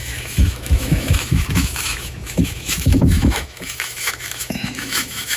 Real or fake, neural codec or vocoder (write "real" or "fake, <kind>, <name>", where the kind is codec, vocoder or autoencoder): fake, autoencoder, DAC-VAE